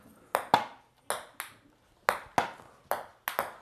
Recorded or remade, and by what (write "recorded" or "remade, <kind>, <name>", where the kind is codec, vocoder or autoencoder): recorded